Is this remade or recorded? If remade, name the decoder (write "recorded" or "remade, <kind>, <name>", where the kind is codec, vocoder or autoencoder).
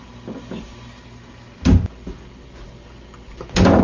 recorded